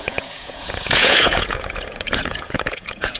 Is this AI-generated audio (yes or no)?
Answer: yes